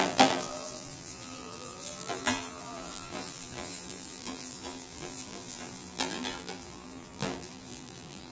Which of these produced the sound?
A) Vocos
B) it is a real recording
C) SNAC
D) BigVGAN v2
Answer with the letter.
D